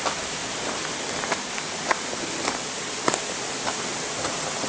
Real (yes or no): yes